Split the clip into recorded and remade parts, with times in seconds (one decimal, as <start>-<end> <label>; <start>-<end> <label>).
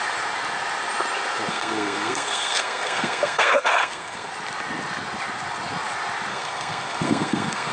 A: 0.0-1.5 recorded; 1.5-4.3 remade; 4.3-6.3 recorded; 6.3-7.7 remade